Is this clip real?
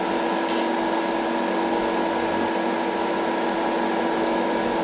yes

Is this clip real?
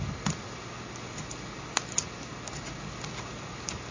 yes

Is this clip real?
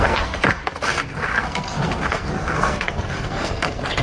no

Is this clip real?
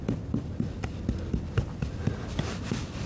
yes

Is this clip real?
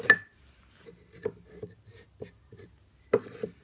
yes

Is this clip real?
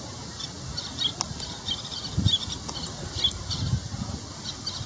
yes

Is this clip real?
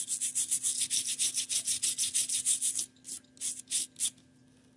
yes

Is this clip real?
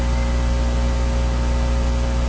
yes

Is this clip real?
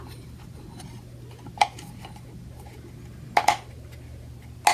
yes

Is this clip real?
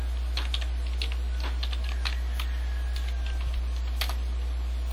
yes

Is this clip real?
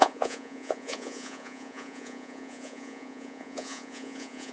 no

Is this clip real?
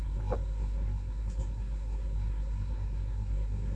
no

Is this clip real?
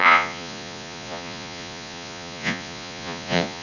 no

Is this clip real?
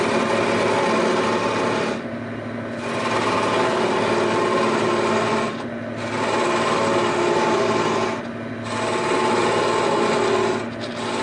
yes